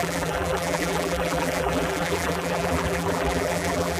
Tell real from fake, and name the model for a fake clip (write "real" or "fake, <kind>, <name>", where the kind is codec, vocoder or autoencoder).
fake, vocoder, BigVGAN v2